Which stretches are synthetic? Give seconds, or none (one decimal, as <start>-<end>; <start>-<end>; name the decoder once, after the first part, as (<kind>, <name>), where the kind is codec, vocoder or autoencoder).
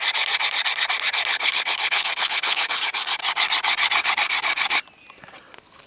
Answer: 1.3-2.8 (codec, HILCodec)